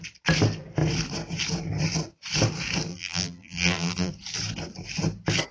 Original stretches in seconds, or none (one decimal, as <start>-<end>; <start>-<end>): 0.0-2.9; 4.1-5.5